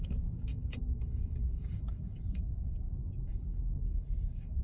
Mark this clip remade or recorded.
remade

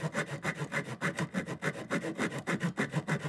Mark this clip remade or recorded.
recorded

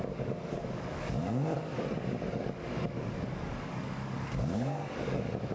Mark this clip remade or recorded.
remade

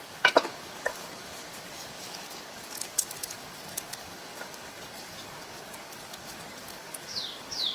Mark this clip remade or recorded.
remade